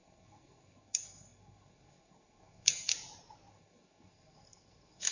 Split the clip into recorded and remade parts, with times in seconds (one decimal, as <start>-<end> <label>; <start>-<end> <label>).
0.0-2.9 remade; 2.9-3.5 recorded; 3.5-5.1 remade